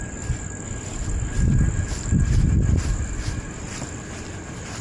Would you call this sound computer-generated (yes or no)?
no